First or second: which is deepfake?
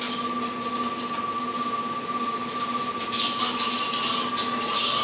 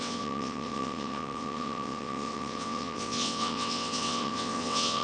second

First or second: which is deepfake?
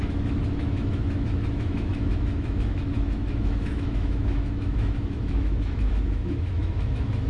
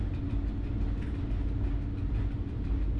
first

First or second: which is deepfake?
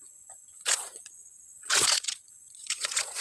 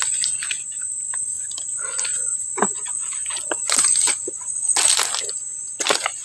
first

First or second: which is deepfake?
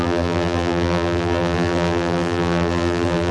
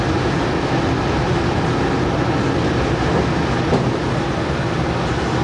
first